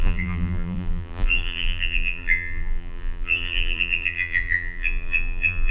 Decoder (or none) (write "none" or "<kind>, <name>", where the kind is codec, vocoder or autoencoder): vocoder, BigVGAN v2